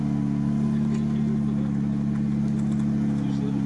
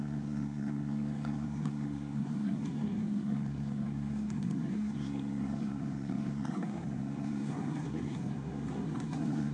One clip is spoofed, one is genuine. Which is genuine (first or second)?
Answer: first